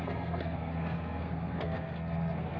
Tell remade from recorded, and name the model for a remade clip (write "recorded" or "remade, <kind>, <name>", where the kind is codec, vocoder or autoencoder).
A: remade, codec, SNAC